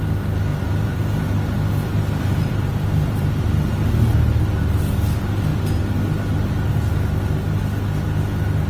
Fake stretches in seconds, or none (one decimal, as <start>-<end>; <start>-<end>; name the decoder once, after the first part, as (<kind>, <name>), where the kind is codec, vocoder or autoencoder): 0.5-3.4 (vocoder, BigVGAN v2)